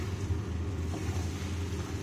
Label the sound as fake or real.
real